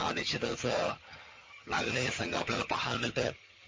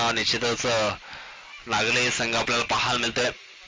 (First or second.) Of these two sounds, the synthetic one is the first